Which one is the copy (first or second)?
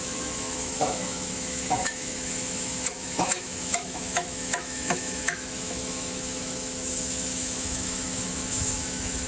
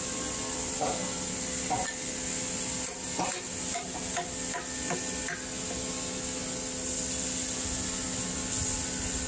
first